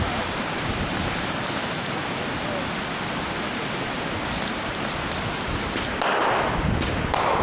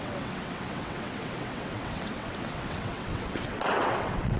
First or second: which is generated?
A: second